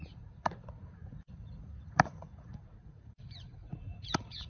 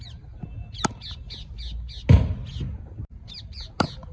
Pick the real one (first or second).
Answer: second